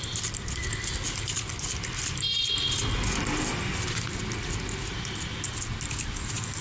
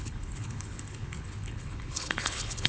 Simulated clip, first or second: second